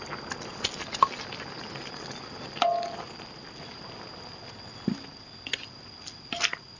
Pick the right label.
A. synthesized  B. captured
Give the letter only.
B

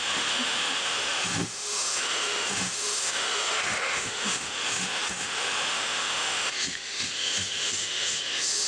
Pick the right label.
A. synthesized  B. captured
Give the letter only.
A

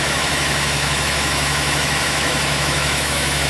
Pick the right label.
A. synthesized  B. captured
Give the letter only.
A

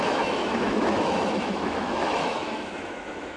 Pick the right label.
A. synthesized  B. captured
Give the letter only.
A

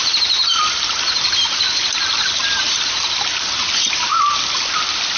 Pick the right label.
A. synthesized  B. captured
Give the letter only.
B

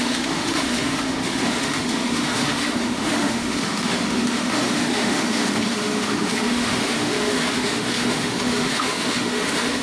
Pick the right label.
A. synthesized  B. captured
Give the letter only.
A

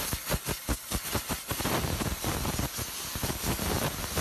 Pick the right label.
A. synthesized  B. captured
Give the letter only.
B